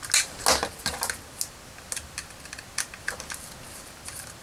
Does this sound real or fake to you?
real